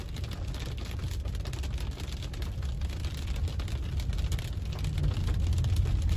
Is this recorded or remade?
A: recorded